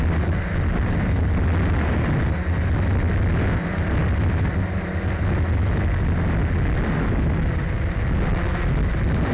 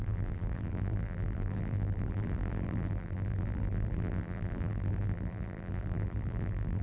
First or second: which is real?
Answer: first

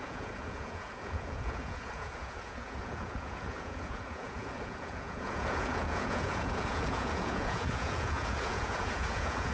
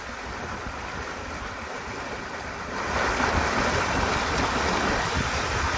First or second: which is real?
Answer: second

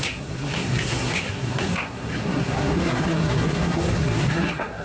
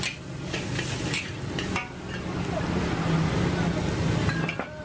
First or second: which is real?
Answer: second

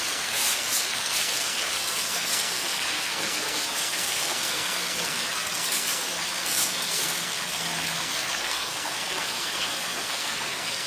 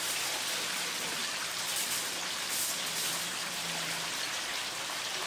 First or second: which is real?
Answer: second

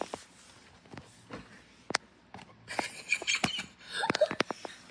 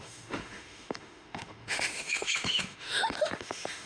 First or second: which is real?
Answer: first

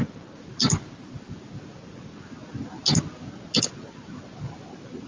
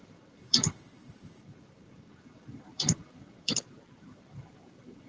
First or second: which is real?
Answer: first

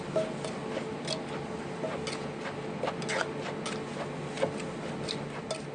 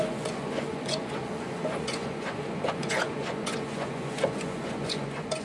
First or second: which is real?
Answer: first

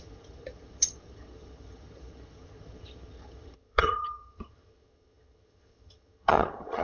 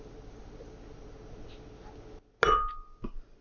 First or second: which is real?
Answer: second